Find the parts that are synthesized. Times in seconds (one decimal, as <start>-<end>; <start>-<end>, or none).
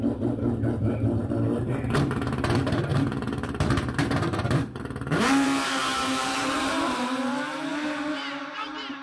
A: 0.0-7.7; 8.2-9.0